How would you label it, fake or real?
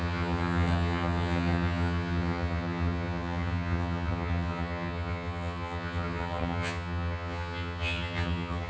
fake